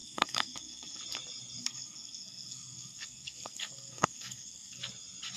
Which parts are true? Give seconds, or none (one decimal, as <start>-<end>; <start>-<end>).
1.0-1.6; 4.8-5.4